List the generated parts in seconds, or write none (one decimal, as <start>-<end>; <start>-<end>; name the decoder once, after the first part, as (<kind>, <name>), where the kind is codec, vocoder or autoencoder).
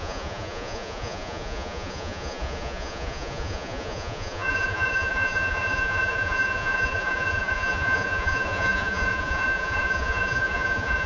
0.0-11.1 (vocoder, Vocos)